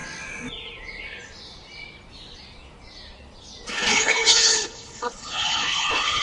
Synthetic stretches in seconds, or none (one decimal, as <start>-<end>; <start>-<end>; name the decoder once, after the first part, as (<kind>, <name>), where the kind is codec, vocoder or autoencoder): 3.7-6.2 (codec, HILCodec)

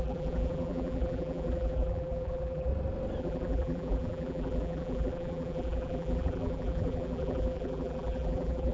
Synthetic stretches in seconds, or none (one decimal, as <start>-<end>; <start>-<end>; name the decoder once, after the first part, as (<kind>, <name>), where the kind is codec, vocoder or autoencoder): 0.0-2.7 (vocoder, BigVGAN v2); 3.2-8.7

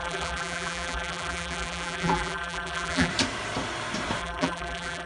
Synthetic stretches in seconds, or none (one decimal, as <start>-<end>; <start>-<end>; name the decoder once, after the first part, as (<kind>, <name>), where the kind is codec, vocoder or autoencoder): 0.0-3.1 (vocoder, BigVGAN v2); 4.2-5.1